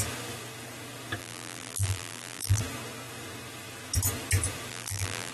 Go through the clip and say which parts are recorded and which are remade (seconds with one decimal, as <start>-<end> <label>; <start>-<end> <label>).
0.0-1.2 recorded; 1.2-2.6 remade; 2.6-4.7 recorded; 4.7-5.3 remade